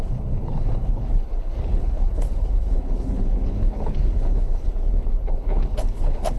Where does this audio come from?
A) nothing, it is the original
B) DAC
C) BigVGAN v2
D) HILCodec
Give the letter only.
D